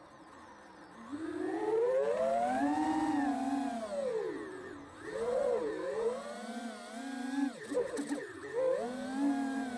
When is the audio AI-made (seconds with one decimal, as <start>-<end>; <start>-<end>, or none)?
none